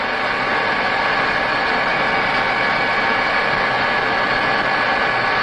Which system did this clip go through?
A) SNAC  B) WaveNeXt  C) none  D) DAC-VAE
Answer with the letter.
C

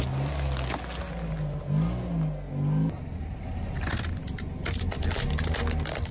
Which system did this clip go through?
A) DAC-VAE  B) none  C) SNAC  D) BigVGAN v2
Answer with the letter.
B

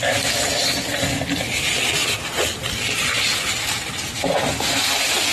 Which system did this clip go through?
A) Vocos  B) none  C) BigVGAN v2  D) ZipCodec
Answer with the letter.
B